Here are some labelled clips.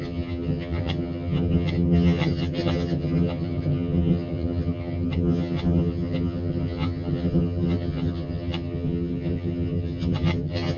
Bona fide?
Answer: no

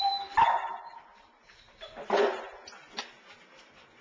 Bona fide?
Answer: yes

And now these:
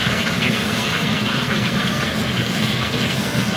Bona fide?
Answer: no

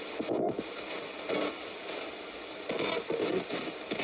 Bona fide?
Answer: yes